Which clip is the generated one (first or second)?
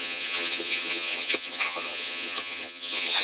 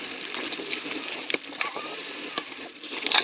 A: first